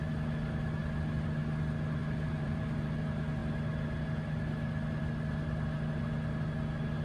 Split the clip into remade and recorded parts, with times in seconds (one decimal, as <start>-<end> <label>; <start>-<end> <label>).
0.0-2.0 recorded; 2.0-3.0 remade; 3.0-7.0 recorded